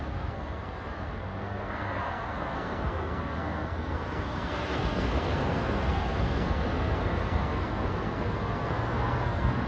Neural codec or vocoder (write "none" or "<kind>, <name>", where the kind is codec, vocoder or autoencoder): codec, SNAC